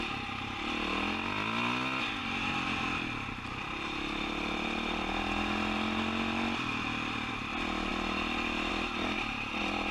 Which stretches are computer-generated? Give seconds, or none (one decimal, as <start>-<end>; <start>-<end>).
none